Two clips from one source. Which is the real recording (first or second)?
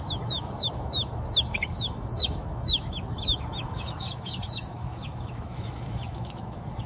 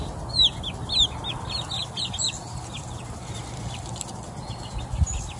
second